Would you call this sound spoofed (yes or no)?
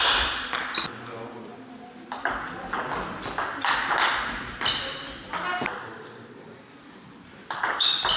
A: no